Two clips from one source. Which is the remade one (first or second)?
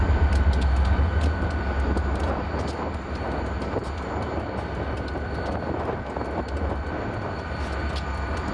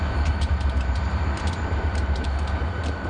second